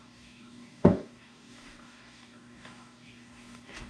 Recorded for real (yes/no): no